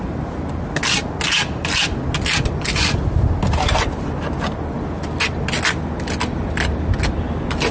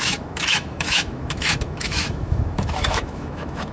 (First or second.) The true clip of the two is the first